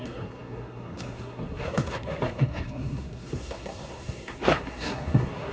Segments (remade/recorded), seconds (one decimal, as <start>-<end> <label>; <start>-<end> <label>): 0.0-5.5 remade